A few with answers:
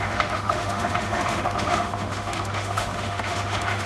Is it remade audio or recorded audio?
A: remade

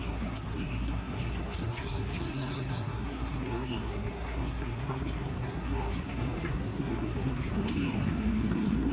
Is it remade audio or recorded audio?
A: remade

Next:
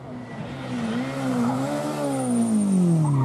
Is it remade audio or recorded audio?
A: recorded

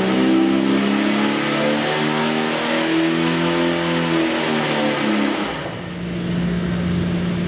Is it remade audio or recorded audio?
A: recorded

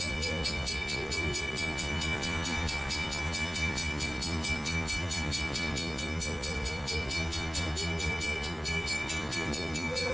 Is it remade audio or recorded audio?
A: remade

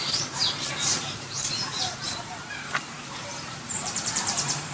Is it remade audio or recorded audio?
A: remade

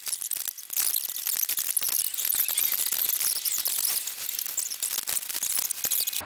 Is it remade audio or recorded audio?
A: recorded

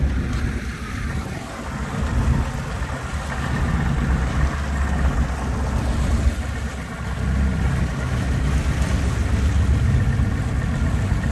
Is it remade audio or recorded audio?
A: recorded